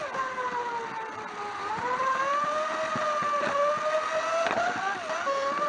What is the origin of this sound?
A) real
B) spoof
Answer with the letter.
A